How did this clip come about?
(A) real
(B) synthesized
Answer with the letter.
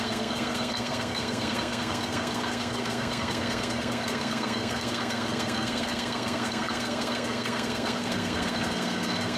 B